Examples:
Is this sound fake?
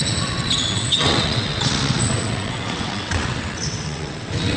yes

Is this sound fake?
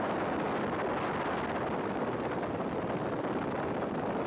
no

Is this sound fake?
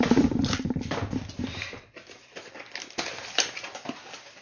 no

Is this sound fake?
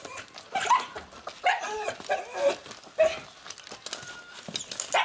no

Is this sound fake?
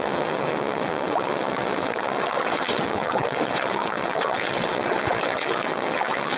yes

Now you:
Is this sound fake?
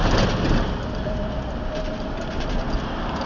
no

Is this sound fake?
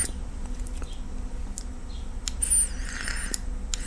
no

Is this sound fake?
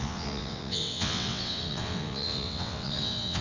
yes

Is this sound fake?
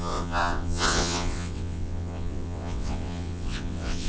yes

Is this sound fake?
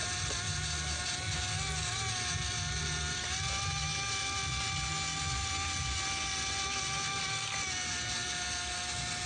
no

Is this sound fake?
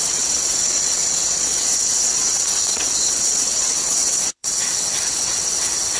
yes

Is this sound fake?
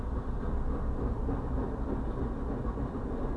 no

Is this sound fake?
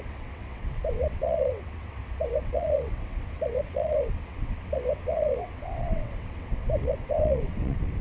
yes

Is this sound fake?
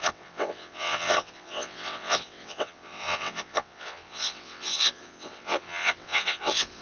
yes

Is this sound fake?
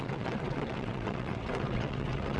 yes